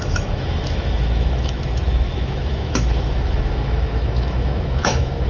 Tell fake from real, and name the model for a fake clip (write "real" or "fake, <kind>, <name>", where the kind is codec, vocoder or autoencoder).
fake, autoencoder, DAC-VAE